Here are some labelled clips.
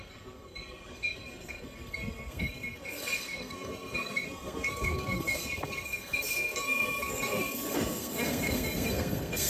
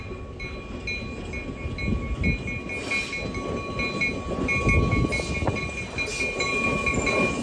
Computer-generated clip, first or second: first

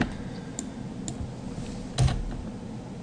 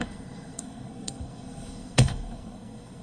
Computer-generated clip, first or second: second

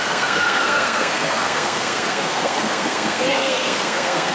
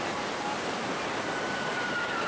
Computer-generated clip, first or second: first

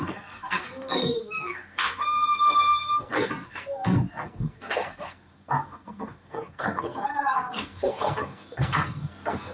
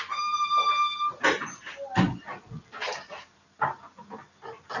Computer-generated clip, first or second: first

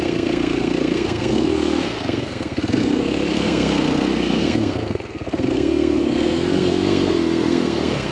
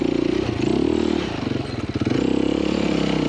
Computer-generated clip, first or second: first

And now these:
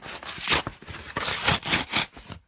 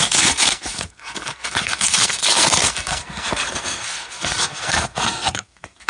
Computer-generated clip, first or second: second